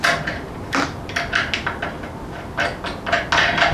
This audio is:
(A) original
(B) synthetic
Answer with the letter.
A